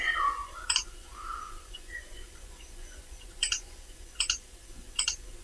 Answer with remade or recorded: remade